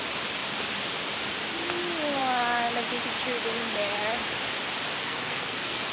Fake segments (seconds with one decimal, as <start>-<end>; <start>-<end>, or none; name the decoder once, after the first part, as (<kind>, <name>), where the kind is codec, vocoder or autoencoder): 5.0-5.9 (codec, SNAC)